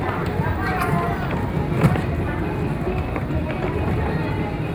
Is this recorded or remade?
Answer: recorded